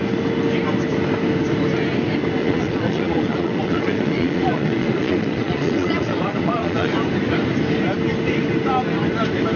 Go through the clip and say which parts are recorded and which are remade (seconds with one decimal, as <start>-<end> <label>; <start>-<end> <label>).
0.0-2.4 recorded; 2.4-6.9 remade; 6.9-9.6 recorded